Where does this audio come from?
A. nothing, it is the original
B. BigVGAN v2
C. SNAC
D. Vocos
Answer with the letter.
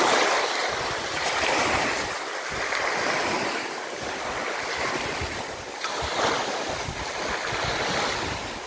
A